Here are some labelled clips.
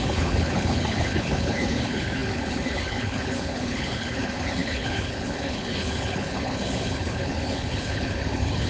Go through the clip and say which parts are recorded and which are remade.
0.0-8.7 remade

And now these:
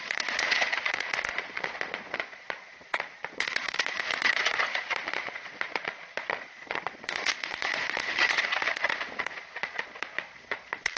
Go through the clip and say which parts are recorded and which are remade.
0.0-11.0 remade

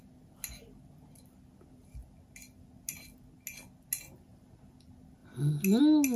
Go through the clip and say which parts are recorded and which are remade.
0.0-6.2 recorded